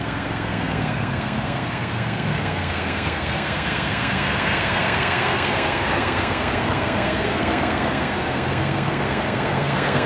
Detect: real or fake fake